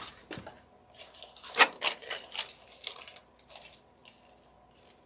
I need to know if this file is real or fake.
real